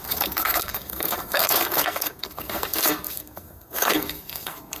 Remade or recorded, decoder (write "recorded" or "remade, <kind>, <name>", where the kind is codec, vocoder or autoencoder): remade, codec, SNAC